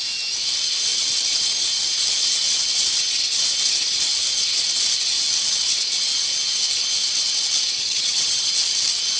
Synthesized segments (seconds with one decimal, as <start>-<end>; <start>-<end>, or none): 7.8-8.5